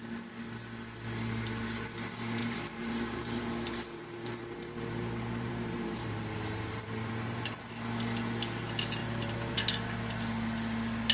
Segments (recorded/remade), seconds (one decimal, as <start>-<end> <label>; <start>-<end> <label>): 0.0-2.4 recorded; 2.4-7.7 remade; 7.7-9.0 recorded; 9.0-9.6 remade; 9.6-11.1 recorded